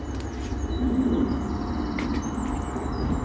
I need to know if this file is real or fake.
real